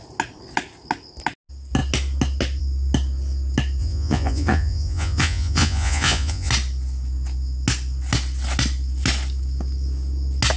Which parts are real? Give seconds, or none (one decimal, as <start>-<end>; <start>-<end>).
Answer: 0.0-3.8; 6.5-10.6